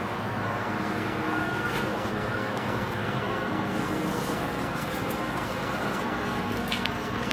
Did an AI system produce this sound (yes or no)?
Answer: yes